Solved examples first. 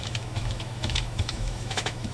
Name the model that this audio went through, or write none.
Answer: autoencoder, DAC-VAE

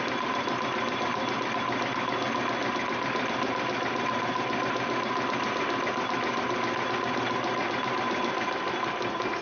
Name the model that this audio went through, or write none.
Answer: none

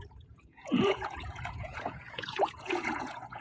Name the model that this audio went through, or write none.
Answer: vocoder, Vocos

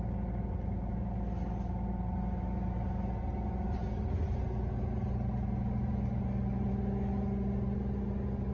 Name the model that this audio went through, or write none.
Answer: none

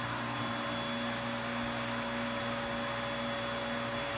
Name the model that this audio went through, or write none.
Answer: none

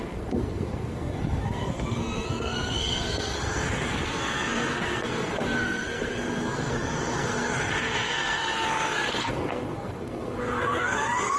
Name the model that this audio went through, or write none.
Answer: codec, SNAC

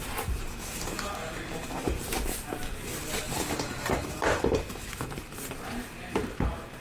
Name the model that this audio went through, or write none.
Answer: vocoder, BigVGAN v2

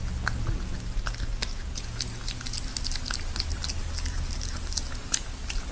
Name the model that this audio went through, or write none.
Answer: none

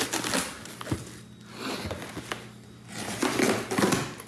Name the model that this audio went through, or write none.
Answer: none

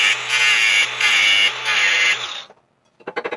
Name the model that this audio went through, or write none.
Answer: none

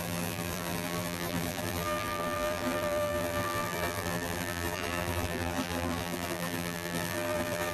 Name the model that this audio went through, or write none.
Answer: vocoder, BigVGAN v2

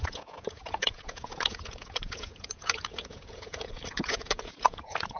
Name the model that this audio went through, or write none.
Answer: vocoder, Vocos